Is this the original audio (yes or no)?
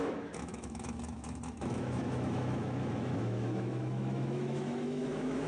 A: no